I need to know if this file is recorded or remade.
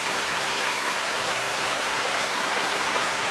remade